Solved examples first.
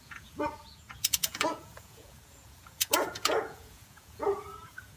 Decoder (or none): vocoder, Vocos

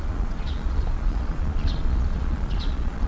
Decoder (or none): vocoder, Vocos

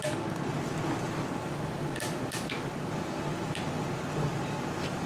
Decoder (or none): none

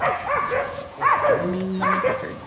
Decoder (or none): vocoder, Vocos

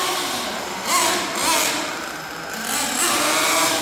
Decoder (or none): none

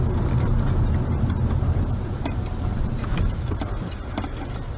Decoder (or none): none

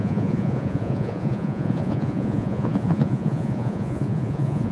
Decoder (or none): vocoder, Vocos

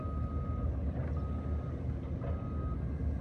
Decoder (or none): none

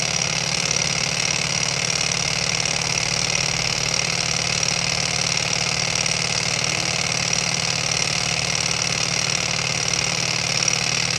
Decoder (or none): none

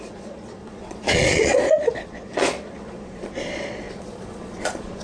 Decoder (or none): vocoder, Vocos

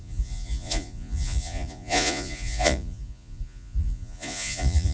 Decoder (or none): vocoder, Vocos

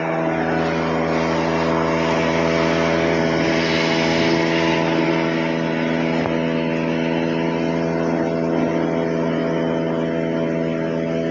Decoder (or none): none